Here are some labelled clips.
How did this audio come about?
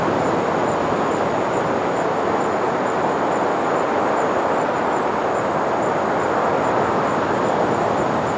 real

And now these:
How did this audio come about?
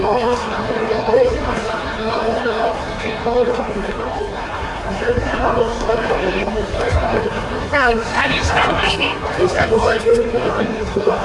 fake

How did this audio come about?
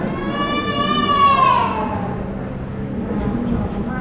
real